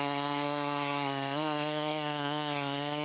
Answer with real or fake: fake